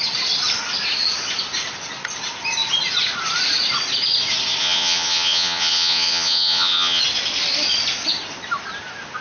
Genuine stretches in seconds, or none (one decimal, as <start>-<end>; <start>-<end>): 0.0-4.6; 7.0-9.2